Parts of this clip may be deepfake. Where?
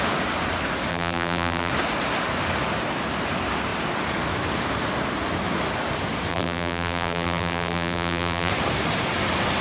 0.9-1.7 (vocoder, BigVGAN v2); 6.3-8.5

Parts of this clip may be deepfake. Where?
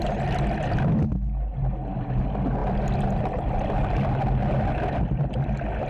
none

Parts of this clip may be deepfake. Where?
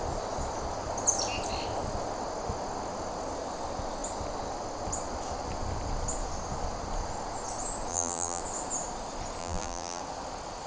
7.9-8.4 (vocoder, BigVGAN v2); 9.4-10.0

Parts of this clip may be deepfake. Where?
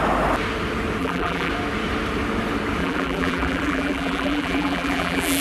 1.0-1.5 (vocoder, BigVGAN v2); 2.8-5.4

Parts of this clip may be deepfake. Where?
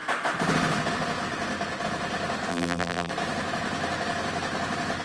2.5-3.1 (vocoder, BigVGAN v2)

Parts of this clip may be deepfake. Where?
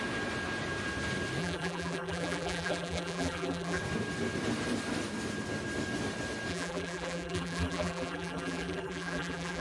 1.4-3.8 (vocoder, BigVGAN v2); 6.5-9.6